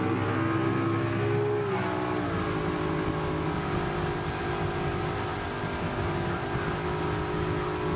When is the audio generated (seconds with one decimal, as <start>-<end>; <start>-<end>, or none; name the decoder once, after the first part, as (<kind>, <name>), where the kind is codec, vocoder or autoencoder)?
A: none